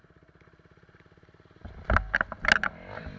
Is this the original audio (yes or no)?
yes